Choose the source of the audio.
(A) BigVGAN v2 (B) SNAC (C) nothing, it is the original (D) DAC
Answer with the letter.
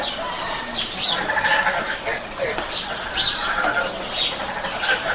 C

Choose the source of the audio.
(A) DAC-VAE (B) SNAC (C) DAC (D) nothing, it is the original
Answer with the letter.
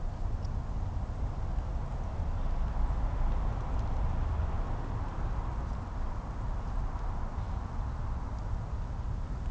D